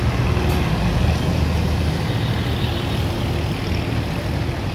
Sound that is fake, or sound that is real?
real